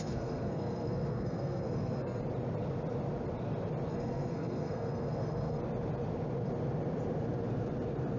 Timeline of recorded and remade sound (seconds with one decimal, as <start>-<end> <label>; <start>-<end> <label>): 0.0-2.2 remade; 2.2-3.9 recorded; 3.9-5.6 remade; 5.6-8.2 recorded